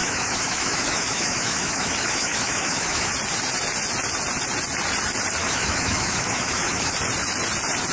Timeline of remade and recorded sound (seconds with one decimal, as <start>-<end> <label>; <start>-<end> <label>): 0.0-3.1 remade; 3.1-5.4 recorded; 5.4-6.9 remade; 6.9-7.9 recorded